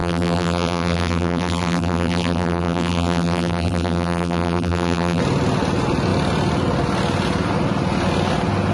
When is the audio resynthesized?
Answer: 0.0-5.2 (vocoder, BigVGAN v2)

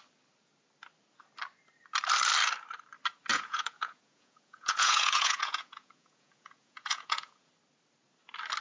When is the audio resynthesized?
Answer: 3.3-7.5 (vocoder, Vocos)